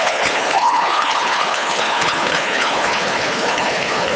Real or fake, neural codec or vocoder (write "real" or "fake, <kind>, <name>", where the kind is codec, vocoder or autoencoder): fake, codec, HILCodec